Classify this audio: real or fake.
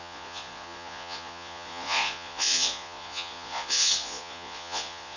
fake